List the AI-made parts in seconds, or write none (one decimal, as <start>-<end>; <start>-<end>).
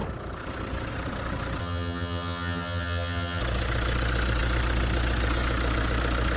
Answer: 1.6-3.4